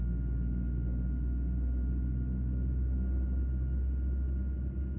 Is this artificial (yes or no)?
no